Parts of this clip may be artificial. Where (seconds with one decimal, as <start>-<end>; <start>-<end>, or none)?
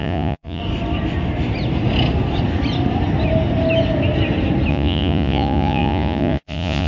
0.0-0.6; 4.7-6.9